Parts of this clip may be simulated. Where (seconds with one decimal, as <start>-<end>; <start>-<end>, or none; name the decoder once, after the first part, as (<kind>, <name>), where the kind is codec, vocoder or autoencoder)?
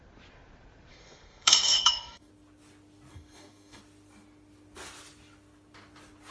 0.9-2.3 (codec, SNAC); 3.1-3.8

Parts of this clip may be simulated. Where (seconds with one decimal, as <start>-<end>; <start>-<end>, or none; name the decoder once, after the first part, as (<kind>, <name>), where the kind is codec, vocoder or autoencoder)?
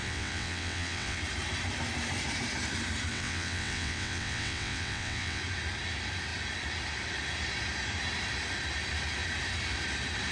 0.0-1.2 (vocoder, WaveNeXt); 3.1-5.4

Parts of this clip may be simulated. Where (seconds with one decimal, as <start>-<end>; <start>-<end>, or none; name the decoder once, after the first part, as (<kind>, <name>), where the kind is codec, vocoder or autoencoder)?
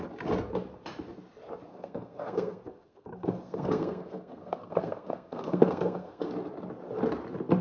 1.7-6.3 (codec, SNAC)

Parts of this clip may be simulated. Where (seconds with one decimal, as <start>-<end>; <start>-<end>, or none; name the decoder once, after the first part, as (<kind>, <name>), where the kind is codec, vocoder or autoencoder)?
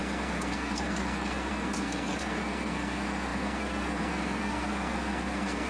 0.0-5.7 (codec, SNAC)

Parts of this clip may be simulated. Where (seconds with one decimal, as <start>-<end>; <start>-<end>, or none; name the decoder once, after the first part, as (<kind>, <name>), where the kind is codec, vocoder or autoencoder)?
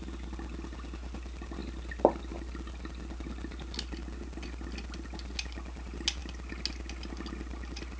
none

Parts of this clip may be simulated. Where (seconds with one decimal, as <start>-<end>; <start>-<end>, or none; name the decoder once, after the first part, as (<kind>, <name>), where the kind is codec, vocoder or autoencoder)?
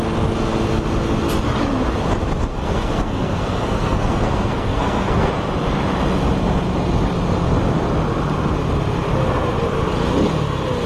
2.5-5.3 (codec, SNAC)